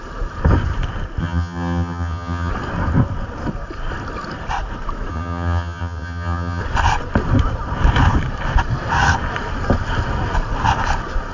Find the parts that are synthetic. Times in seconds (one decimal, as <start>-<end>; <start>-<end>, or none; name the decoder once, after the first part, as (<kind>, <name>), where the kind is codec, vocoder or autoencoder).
1.2-2.5 (vocoder, HiFi-GAN); 5.1-6.6